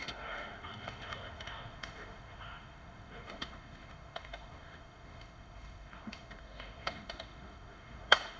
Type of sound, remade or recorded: remade